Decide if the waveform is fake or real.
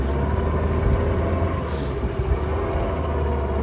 real